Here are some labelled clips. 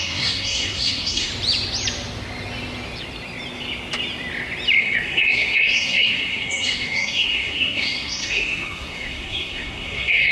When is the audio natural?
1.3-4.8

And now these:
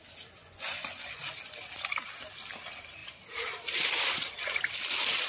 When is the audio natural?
0.0-0.4; 1.2-5.3

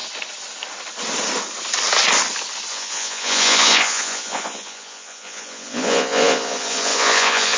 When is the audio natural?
0.0-2.7

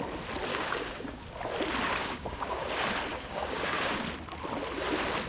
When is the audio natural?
0.0-0.5; 1.4-2.0; 2.7-3.1; 4.0-5.3

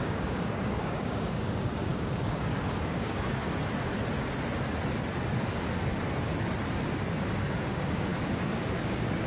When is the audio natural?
3.4-7.6; 8.1-8.7

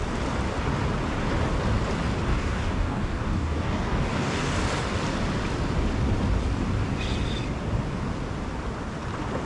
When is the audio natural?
0.0-2.3; 4.5-9.5

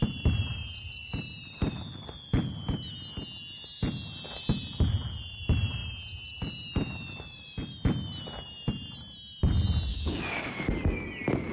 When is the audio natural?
0.0-9.9; 10.7-11.5